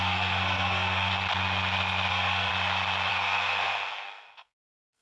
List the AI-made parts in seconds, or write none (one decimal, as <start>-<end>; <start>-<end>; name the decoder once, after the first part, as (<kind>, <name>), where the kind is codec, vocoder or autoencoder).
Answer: 0.0-1.1 (codec, SNAC); 2.1-2.5; 3.1-5.0

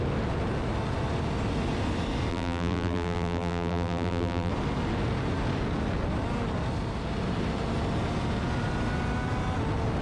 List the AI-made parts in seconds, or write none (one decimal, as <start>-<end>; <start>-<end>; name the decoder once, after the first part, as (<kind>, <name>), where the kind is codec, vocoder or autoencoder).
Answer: 2.3-4.5 (vocoder, BigVGAN v2)

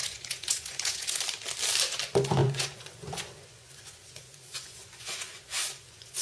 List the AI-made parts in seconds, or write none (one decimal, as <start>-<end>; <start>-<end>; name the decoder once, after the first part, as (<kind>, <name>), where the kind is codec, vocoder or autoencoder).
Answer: 0.0-1.2 (vocoder, Vocos); 2.4-6.2